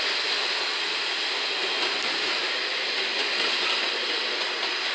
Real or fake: real